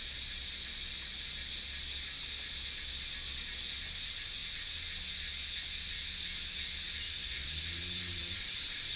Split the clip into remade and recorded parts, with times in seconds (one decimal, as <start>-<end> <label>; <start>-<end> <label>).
0.0-7.2 recorded; 7.2-9.0 remade